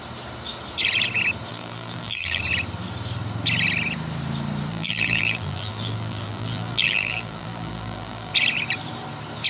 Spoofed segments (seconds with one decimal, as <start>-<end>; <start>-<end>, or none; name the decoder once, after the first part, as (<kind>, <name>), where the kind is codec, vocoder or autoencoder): 1.5-2.4 (vocoder, BigVGAN v2); 4.7-8.3